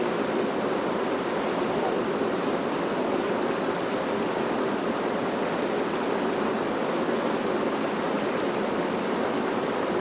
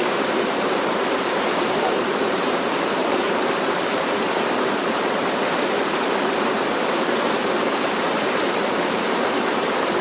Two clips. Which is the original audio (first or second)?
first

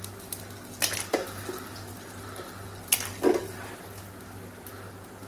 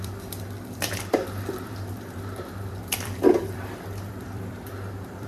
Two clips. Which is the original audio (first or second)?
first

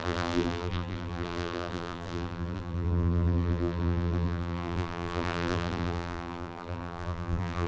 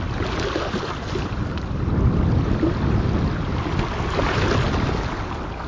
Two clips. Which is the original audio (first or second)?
second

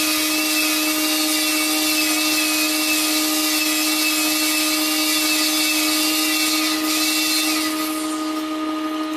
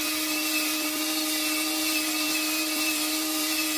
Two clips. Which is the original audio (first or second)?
first